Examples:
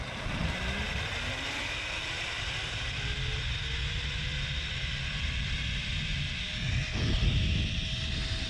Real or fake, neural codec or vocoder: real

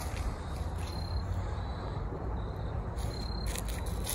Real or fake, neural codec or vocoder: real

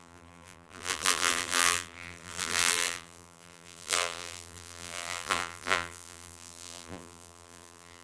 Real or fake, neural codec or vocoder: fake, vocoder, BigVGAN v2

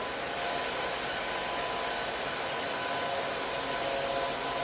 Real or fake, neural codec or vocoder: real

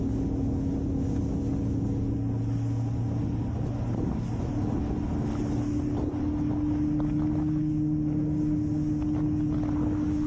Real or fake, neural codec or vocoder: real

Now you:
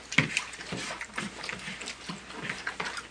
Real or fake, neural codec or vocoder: real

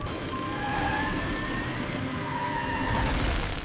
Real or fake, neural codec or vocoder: real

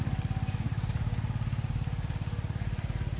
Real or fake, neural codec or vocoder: real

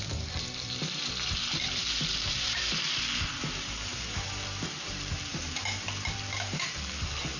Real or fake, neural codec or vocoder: fake, vocoder, BigVGAN v2